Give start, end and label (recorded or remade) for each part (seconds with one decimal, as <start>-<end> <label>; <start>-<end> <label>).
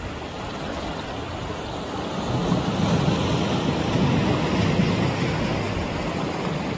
0.0-2.4 recorded; 2.4-3.1 remade; 3.1-6.8 recorded